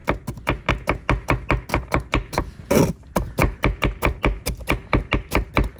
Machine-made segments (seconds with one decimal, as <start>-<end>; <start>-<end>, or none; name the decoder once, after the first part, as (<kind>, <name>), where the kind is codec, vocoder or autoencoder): 1.7-2.4 (vocoder, BigVGAN v2)